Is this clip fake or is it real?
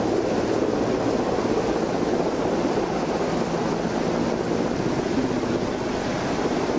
real